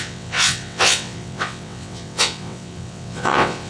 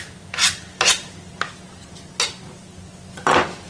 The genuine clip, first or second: second